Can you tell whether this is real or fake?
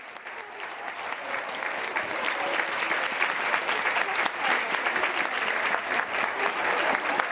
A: real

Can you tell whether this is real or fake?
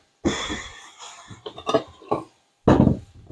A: real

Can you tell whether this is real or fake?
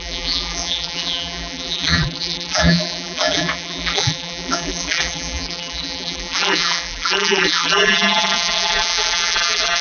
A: fake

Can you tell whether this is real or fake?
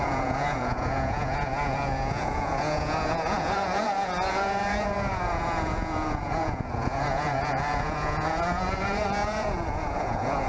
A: fake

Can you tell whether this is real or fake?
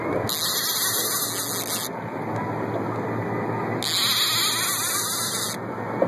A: real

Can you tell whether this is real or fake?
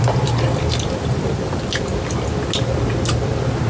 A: real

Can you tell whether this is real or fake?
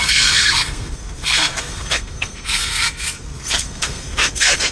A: fake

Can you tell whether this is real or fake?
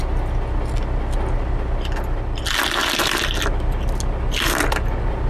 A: real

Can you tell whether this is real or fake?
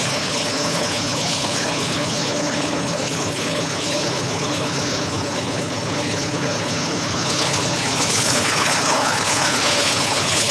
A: fake